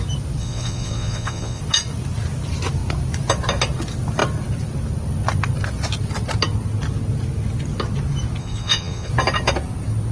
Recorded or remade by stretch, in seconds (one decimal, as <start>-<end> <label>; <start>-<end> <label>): 0.0-0.4 recorded; 0.4-1.6 remade; 1.6-8.4 recorded; 8.4-9.1 remade; 9.1-10.1 recorded